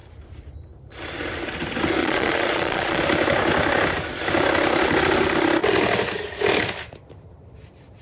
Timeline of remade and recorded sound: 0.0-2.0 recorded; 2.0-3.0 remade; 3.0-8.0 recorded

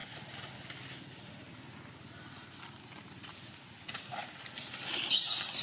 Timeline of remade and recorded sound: 0.0-5.6 recorded